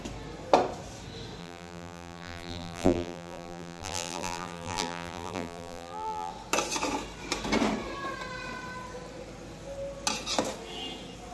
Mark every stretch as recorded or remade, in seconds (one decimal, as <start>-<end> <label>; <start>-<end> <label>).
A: 0.0-1.4 recorded; 1.4-6.3 remade; 6.3-11.3 recorded